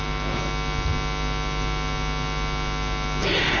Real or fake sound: real